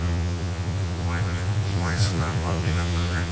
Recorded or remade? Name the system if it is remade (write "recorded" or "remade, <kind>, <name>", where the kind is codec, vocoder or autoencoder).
remade, vocoder, Vocos